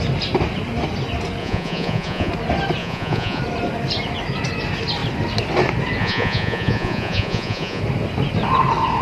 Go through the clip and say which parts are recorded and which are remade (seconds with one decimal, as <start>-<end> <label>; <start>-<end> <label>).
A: 0.0-1.4 recorded; 1.4-2.3 remade; 2.3-2.8 recorded; 2.8-3.4 remade; 3.4-6.0 recorded; 6.0-7.8 remade; 7.8-9.0 recorded